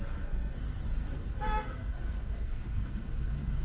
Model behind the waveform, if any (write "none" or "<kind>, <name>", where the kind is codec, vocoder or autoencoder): codec, SNAC